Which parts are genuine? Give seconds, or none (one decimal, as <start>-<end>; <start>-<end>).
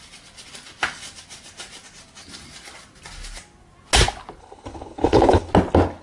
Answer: 0.0-4.4; 5.5-6.0